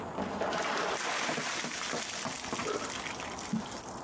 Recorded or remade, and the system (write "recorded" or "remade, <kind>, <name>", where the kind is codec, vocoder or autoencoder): recorded